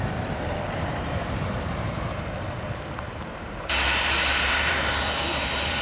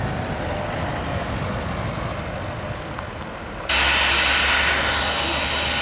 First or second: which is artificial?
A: first